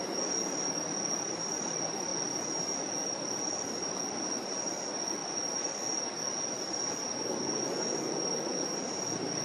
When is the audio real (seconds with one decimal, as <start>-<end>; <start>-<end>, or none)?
0.0-9.4